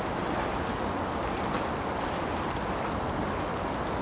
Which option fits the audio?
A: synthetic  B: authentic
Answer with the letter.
B